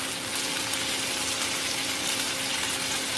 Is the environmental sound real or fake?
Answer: real